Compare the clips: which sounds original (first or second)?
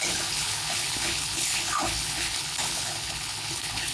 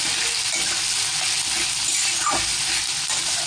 second